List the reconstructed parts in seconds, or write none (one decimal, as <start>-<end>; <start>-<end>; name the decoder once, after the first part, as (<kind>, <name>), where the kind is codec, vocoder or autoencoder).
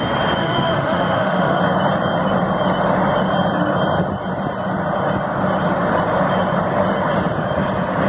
0.4-1.6 (autoencoder, DAC-VAE)